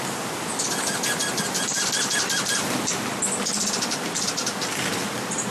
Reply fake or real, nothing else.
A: fake